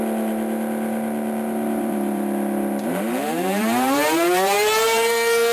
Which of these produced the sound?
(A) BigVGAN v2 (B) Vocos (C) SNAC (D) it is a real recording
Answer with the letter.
A